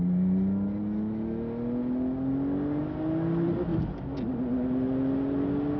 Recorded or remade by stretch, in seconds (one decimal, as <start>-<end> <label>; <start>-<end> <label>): 0.0-5.8 recorded